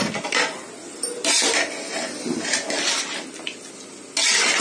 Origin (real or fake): real